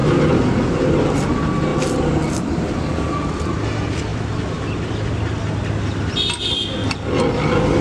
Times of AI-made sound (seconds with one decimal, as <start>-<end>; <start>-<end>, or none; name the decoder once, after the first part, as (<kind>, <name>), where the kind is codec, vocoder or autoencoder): none